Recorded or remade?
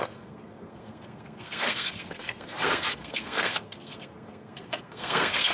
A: remade